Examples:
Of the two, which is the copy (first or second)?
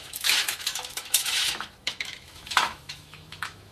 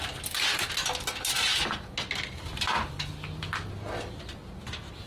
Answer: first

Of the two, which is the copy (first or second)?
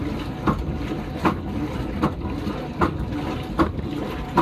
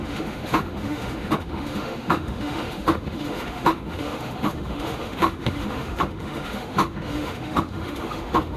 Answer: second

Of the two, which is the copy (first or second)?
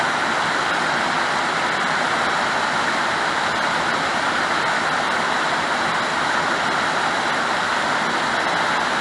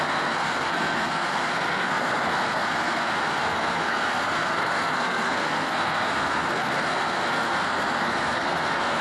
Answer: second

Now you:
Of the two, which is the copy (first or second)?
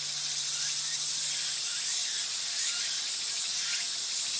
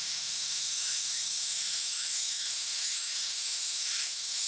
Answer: second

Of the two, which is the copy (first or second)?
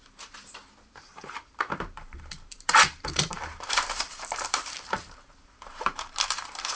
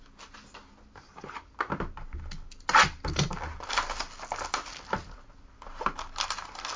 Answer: first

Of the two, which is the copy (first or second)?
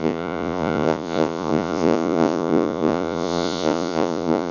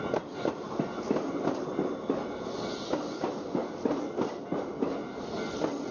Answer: first